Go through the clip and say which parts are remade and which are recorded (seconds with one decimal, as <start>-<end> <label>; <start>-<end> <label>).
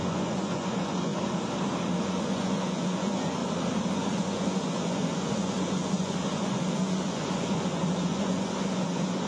0.0-1.1 remade; 1.1-2.0 recorded; 2.0-3.4 remade; 3.4-3.9 recorded; 3.9-9.3 remade